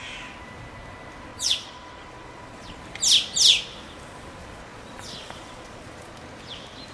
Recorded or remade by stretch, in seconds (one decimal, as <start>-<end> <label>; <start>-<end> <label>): 0.0-1.3 recorded; 1.3-2.8 remade; 2.8-4.4 recorded; 4.4-6.2 remade; 6.2-6.9 recorded